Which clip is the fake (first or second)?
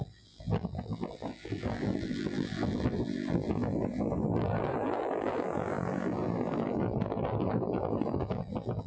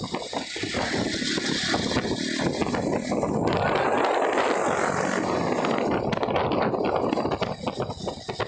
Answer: first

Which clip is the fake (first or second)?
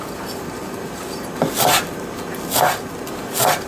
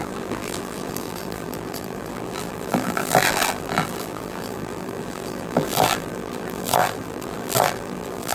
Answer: second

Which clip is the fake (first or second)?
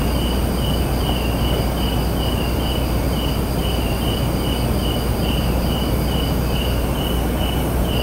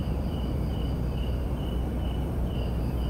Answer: second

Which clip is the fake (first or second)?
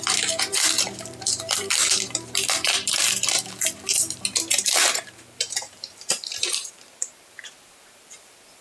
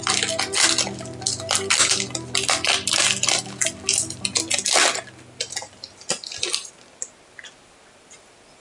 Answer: first